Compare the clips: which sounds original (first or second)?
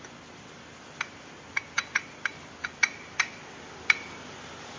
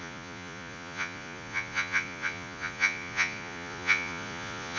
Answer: first